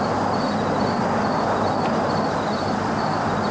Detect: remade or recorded recorded